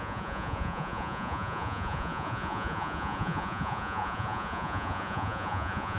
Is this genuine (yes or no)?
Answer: no